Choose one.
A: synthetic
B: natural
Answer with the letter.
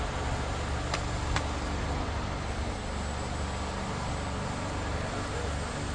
B